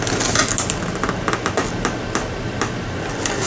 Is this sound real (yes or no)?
yes